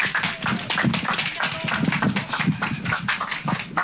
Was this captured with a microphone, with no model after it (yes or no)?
yes